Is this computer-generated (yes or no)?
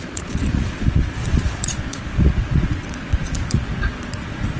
yes